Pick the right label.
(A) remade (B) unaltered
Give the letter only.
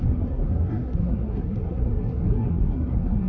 A